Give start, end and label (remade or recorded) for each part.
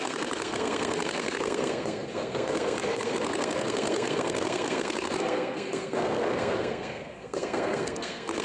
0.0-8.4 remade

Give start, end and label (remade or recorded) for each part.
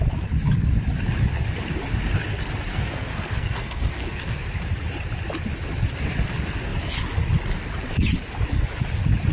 0.0-2.7 recorded; 2.7-4.4 remade; 4.4-9.3 recorded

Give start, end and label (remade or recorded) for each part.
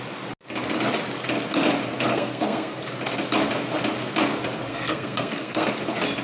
0.0-2.1 recorded; 2.1-2.8 remade; 2.8-4.7 recorded; 4.7-5.7 remade; 5.7-6.2 recorded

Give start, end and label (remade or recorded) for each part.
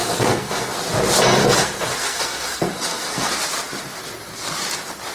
0.0-0.8 remade; 0.8-1.4 recorded; 1.4-3.3 remade; 3.3-5.1 recorded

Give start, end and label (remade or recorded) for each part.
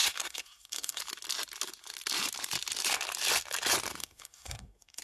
0.0-1.0 remade; 1.0-4.0 recorded; 4.0-5.0 remade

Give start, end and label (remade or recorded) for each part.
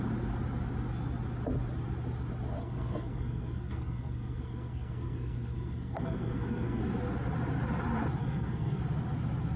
0.0-2.6 recorded; 2.6-6.8 remade; 6.8-8.2 recorded; 8.2-8.8 remade; 8.8-9.6 recorded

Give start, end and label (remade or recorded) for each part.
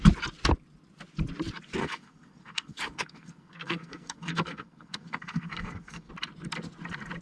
0.0-1.8 recorded; 1.8-6.1 remade; 6.1-7.2 recorded